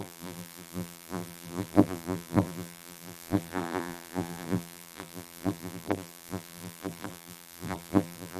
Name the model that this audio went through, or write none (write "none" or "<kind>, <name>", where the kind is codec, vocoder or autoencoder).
vocoder, BigVGAN v2